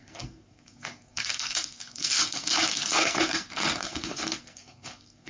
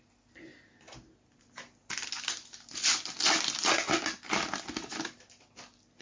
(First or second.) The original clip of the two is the second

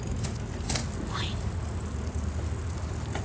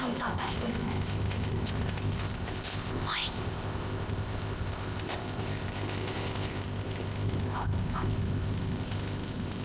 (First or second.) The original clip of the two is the first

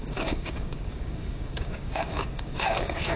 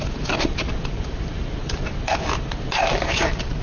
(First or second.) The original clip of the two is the second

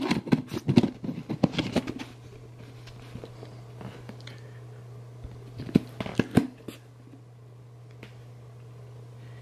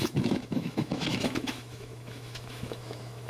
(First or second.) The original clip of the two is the first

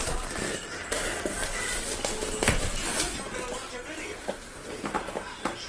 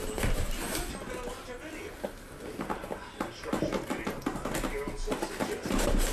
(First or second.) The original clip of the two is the second